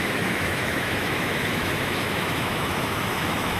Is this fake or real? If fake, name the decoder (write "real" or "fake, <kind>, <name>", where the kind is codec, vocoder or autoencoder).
fake, autoencoder, DAC-VAE